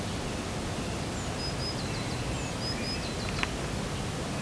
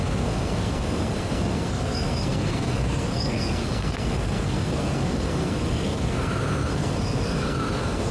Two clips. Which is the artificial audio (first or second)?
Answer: second